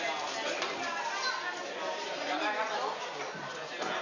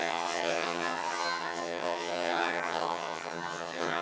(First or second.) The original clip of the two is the first